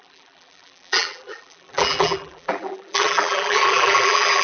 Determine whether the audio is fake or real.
fake